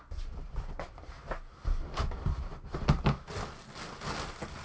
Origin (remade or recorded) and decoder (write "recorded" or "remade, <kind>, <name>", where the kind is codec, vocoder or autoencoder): recorded